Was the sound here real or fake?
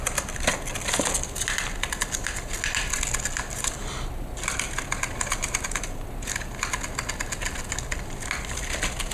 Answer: real